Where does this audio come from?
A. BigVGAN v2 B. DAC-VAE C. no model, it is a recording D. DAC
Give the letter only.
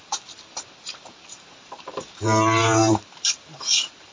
A